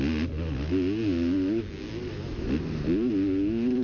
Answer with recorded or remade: recorded